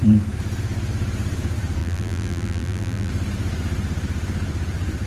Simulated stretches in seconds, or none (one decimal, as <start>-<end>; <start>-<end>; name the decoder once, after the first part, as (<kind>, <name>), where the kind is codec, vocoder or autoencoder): 1.8-3.1 (vocoder, BigVGAN v2)